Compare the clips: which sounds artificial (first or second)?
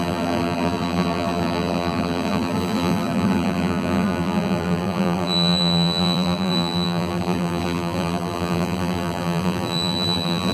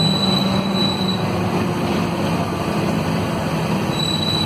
first